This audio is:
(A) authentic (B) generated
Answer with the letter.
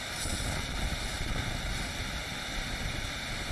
A